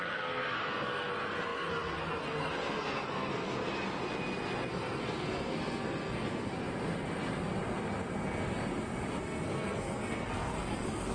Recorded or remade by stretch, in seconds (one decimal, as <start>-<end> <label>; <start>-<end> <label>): 0.0-3.6 remade; 3.6-4.7 recorded; 4.7-6.5 remade; 6.5-9.2 recorded; 9.2-11.1 remade